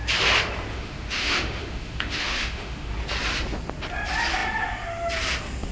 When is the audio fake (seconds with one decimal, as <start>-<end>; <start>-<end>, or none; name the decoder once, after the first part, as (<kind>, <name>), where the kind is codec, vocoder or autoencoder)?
0.7-2.9 (autoencoder, DAC-VAE)